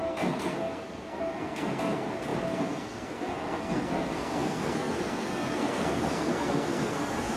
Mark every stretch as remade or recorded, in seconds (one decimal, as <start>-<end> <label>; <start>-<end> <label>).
0.0-7.4 remade